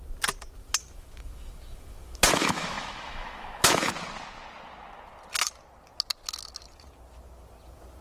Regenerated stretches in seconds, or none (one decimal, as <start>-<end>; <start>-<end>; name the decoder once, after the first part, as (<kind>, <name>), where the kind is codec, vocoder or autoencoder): 0.6-3.9 (autoencoder, DAC-VAE)